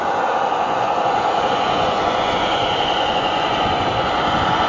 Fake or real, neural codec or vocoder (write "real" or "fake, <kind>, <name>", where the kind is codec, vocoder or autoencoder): fake, vocoder, Vocos